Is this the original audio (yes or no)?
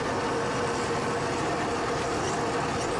yes